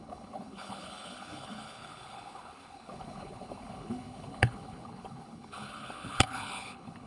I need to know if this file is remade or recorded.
remade